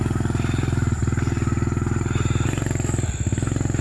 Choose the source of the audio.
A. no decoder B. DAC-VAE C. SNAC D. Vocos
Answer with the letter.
A